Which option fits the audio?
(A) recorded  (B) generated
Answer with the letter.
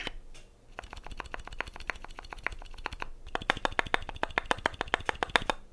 A